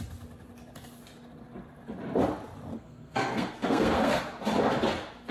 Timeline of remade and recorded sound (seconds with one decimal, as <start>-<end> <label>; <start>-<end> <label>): 0.0-2.7 recorded; 2.7-4.2 remade; 4.2-5.3 recorded